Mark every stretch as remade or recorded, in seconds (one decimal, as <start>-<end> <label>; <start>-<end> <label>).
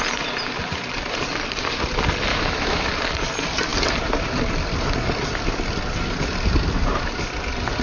0.0-2.3 recorded; 2.3-2.9 remade; 2.9-7.8 recorded